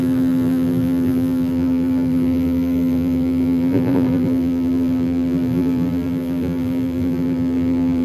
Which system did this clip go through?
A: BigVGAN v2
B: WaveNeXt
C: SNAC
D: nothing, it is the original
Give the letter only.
A